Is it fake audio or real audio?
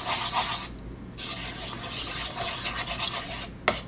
real